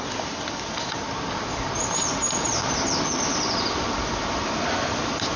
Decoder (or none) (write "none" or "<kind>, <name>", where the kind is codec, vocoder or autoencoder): none